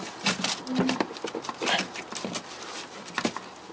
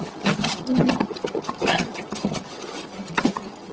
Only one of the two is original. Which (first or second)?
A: first